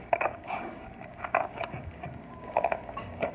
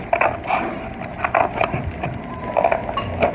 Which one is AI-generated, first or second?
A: first